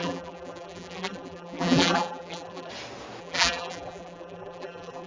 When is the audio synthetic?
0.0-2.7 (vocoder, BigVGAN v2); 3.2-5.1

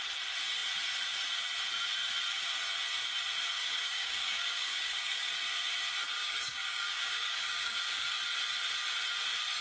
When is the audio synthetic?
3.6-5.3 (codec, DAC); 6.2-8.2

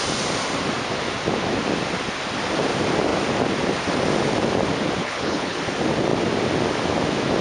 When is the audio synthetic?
5.0-5.6 (codec, HILCodec)

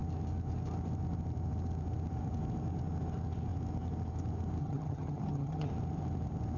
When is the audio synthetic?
4.6-5.7 (vocoder, HiFi-GAN)

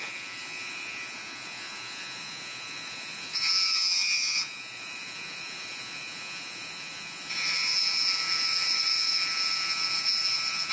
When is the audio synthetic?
0.0-10.7 (vocoder, Vocos)

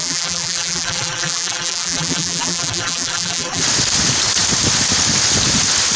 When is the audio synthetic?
0.0-3.6 (vocoder, BigVGAN v2)

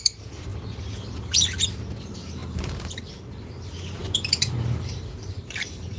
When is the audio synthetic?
0.0-0.5 (vocoder, BigVGAN v2); 2.0-6.0